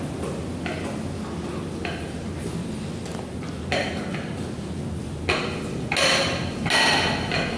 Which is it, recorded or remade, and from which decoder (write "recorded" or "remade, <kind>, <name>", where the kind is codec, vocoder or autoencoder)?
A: recorded